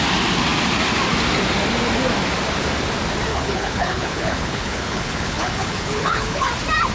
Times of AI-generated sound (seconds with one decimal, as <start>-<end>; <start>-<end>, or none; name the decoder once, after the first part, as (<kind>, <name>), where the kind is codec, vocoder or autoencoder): 3.3-6.5 (codec, HILCodec)